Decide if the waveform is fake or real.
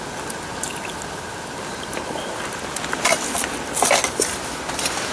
real